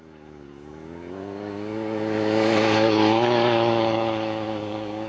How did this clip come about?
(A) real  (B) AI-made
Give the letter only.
B